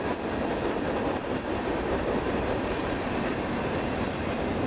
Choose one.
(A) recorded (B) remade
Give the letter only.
A